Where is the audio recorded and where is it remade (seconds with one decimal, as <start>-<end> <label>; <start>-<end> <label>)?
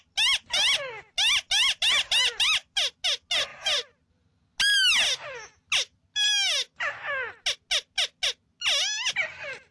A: 0.0-9.7 recorded